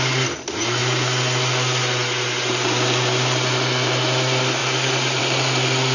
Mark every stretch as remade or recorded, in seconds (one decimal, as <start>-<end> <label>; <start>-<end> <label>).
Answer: 0.0-5.9 recorded